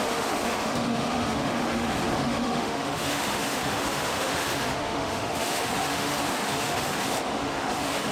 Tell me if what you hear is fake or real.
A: fake